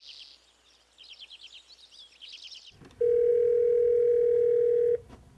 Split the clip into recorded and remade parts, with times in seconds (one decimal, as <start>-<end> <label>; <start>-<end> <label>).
0.0-5.4 recorded